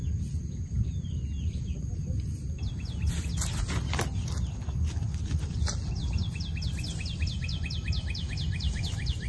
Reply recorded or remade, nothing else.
recorded